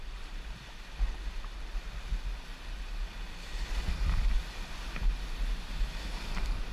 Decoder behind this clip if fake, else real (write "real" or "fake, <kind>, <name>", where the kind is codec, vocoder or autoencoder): real